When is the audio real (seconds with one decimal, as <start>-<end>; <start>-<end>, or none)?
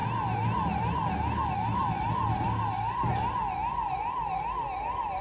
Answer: 0.0-5.2